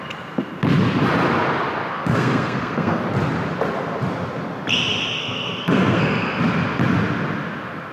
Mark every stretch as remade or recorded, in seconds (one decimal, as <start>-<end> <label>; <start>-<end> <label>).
0.0-1.9 recorded; 1.9-3.0 remade; 3.0-5.2 recorded; 5.2-6.4 remade; 6.4-7.9 recorded